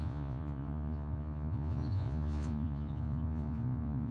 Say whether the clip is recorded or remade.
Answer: remade